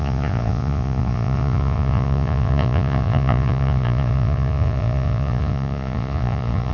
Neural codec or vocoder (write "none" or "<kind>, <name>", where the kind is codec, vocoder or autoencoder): vocoder, Vocos